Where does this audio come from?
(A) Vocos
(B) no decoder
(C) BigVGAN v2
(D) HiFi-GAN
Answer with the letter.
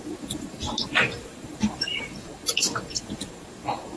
C